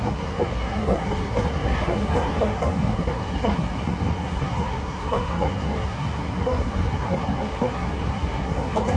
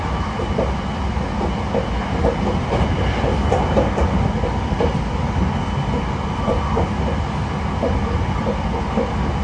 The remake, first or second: first